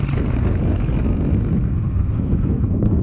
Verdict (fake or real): fake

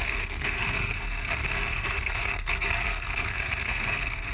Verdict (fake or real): fake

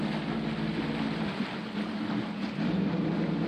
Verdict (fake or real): real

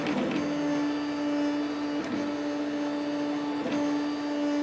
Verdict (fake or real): real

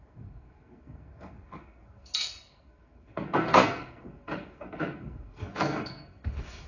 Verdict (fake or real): fake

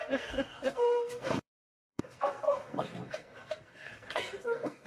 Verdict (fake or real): fake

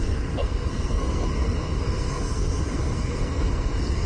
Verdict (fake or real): fake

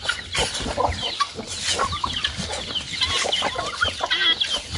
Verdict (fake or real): real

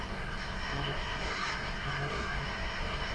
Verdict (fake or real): fake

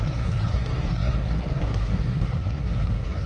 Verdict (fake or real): fake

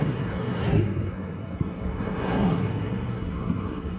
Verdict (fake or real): fake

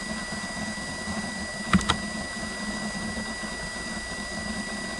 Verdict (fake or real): real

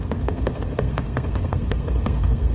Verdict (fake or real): fake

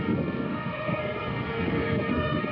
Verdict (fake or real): fake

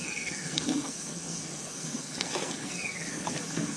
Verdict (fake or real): fake